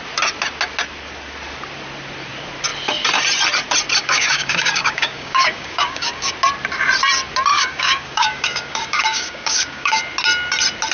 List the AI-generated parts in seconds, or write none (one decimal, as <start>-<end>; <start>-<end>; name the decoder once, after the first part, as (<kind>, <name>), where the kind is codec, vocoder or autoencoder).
4.0-6.3 (codec, DAC); 7.5-10.0